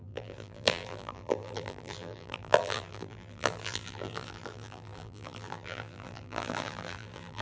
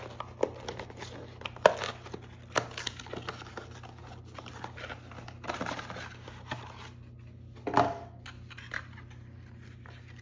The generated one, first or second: first